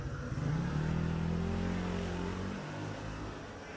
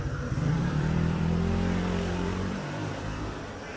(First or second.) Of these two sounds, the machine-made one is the second